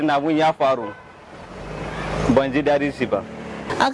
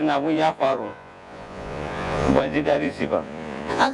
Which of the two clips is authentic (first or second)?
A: first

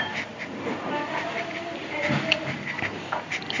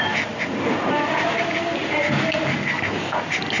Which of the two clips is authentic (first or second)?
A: second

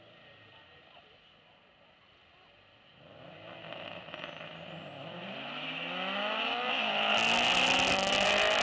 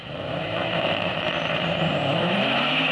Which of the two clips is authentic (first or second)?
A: first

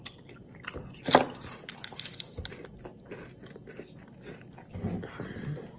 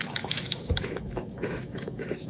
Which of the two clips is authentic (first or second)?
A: first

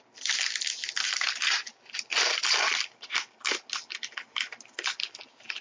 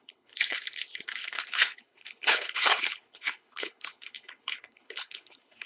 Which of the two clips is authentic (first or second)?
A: first